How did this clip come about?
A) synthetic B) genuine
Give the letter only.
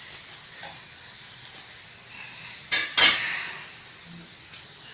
B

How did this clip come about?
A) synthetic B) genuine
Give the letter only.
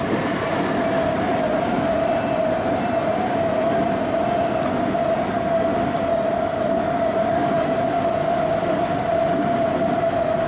B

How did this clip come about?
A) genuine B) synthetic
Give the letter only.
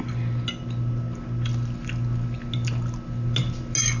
A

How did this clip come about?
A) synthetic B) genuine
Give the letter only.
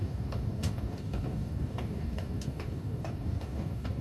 A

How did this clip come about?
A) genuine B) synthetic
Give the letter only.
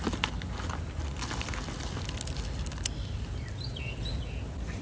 A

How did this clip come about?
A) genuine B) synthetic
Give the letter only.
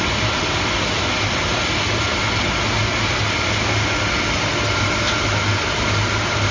A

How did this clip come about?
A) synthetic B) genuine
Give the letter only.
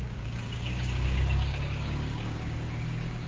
A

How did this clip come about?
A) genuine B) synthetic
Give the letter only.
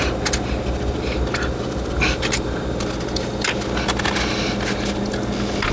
A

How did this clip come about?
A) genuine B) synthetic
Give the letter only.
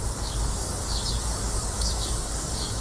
B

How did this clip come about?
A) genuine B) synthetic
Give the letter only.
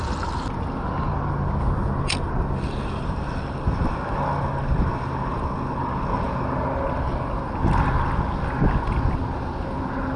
A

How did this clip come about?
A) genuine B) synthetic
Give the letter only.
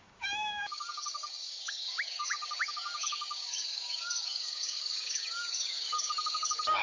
B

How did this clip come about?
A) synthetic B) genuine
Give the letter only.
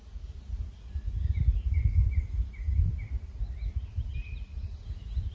B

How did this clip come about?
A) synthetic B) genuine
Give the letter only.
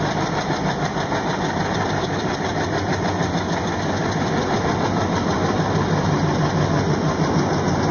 B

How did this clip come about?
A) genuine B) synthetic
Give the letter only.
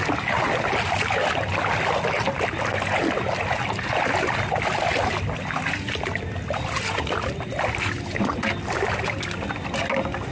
A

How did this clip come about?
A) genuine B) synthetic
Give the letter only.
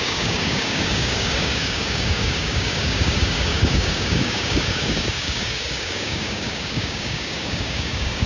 B